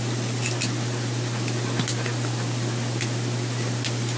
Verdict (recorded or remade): recorded